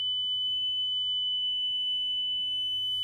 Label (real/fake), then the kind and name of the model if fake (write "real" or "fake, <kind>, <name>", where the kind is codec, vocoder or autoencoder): real